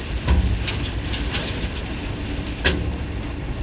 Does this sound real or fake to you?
real